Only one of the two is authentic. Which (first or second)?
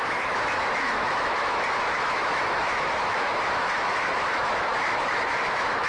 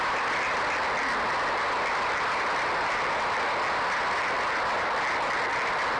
second